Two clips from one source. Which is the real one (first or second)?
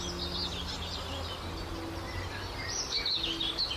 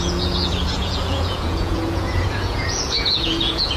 first